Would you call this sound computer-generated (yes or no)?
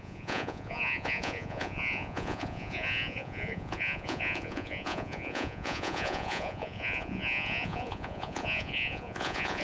yes